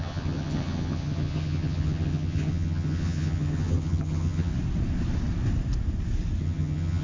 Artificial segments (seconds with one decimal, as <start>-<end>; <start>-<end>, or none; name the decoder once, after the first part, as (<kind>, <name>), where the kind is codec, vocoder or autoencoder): 0.0-4.5 (vocoder, HiFi-GAN); 6.4-7.0